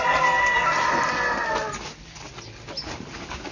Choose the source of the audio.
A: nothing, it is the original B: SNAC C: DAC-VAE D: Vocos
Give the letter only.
A